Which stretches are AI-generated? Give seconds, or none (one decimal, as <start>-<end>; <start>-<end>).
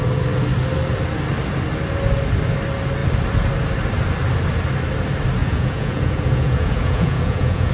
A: 5.4-7.7